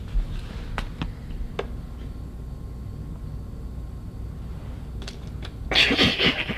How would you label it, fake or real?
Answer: real